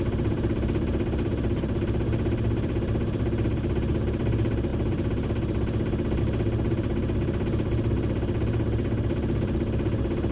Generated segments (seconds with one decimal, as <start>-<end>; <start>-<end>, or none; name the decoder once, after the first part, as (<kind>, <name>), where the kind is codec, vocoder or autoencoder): 0.0-10.3 (vocoder, BigVGAN v2)